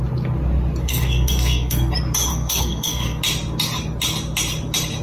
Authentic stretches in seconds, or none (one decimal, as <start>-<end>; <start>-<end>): 0.0-0.8; 1.9-2.3; 3.2-5.0